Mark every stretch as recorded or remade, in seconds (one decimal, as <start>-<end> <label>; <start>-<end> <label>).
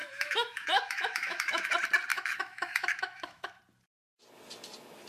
0.0-1.7 remade; 1.7-2.1 recorded; 2.1-3.6 remade; 3.6-5.1 recorded